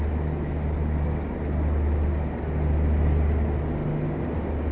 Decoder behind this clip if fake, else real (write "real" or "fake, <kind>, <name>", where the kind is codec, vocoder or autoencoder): real